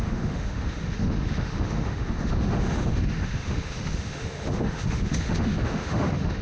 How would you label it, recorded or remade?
remade